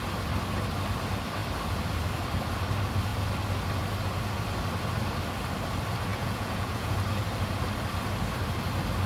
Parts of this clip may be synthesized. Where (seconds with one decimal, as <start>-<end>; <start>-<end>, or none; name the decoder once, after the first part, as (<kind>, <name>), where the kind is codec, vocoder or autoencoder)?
6.1-6.9 (vocoder, Vocos)